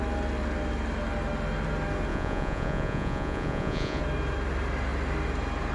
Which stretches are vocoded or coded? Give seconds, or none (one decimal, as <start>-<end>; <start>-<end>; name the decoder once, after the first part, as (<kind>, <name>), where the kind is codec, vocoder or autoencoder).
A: 2.1-4.0 (vocoder, Vocos)